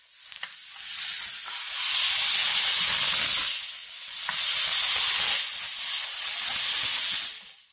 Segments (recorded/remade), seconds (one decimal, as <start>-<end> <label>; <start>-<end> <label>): 0.0-7.7 recorded